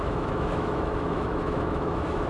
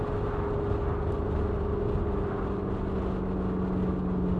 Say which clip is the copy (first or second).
first